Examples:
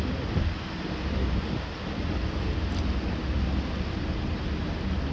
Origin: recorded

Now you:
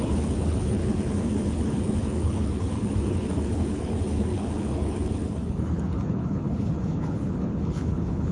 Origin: remade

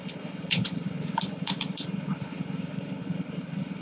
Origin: remade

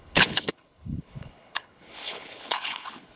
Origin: remade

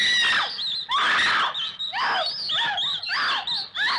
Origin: recorded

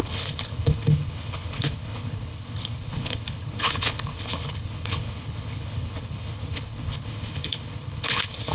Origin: remade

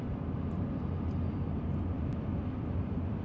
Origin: recorded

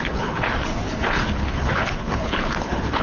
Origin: remade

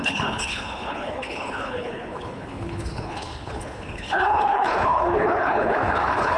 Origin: remade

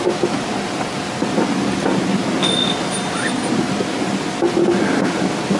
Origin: recorded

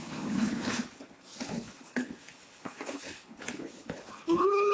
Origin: remade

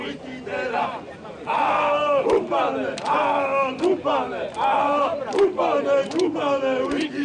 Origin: recorded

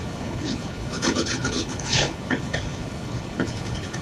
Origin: remade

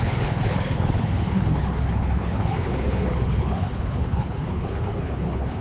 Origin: remade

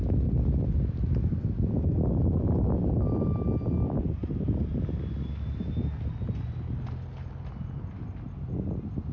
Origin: recorded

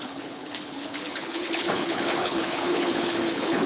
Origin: remade